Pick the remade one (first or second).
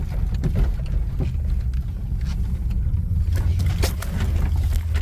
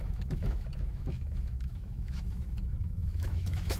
second